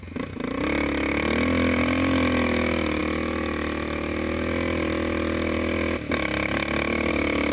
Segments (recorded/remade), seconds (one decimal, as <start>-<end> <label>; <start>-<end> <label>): 0.0-7.5 recorded